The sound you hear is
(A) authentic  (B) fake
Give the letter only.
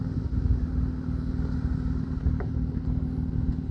A